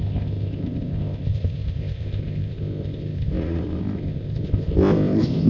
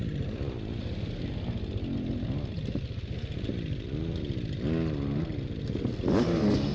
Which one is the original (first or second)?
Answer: second